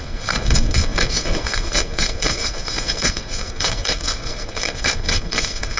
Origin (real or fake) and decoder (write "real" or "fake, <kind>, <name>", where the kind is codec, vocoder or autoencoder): fake, codec, SNAC